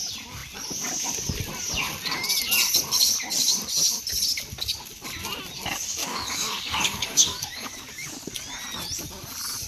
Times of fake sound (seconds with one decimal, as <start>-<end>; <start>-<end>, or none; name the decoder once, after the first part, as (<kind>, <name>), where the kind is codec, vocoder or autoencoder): 6.0-8.1 (codec, DAC)